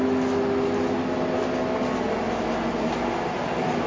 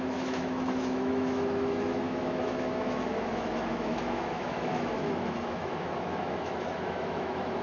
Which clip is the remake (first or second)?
second